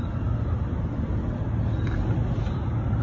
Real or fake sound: real